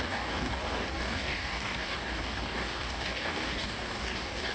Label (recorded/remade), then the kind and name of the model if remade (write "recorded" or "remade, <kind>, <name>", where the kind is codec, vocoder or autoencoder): remade, codec, DAC